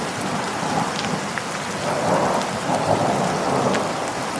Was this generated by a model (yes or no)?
no